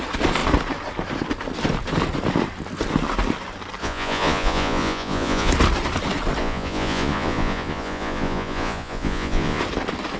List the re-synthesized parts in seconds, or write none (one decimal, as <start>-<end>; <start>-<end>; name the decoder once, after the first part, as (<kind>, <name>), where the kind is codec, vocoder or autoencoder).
3.8-5.5 (vocoder, Vocos); 6.4-9.6